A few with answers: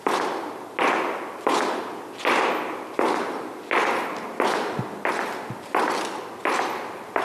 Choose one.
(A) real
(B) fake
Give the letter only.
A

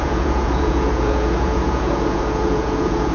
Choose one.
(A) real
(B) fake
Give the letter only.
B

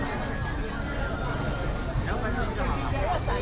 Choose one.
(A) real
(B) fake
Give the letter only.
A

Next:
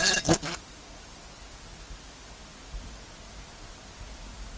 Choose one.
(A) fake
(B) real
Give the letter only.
B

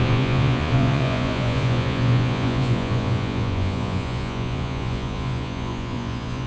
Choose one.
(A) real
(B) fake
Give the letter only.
B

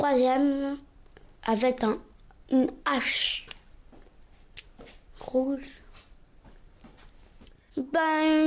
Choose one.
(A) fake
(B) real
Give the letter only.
B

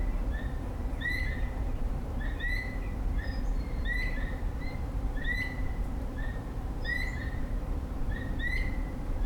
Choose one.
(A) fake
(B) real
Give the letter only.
A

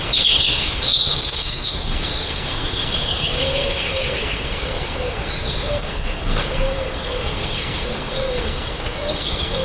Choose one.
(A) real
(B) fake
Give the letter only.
B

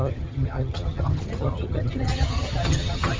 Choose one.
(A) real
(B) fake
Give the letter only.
B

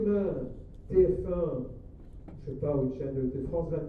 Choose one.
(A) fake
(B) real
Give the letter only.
B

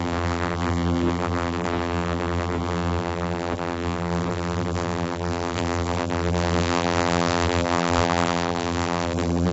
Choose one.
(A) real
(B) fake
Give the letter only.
B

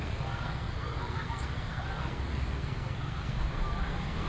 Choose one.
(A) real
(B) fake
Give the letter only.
B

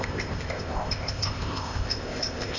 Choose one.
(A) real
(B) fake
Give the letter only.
B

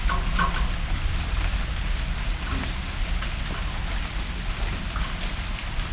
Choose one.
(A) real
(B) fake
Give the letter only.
A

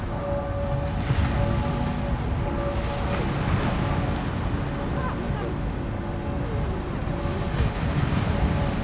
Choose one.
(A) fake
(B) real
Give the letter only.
B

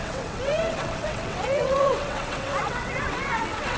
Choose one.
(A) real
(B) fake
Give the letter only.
B